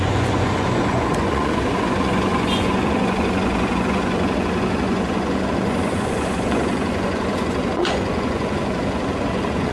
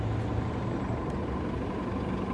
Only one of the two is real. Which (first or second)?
second